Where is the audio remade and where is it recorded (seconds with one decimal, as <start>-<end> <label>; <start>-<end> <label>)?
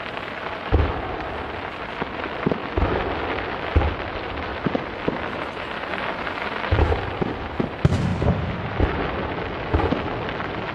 0.0-8.1 recorded; 8.1-8.8 remade; 8.8-10.7 recorded